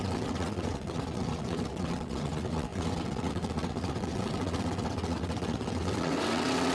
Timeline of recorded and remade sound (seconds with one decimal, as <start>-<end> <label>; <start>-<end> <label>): 0.0-6.7 remade